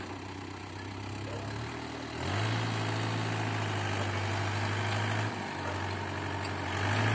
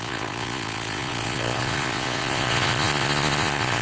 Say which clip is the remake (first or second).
second